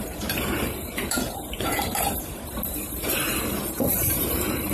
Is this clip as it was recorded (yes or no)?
no